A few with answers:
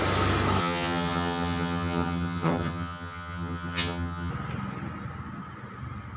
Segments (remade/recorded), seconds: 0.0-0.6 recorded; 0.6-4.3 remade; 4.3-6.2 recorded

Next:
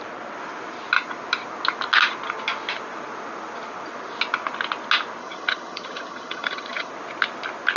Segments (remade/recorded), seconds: 0.0-5.2 recorded; 5.2-6.9 remade; 6.9-7.8 recorded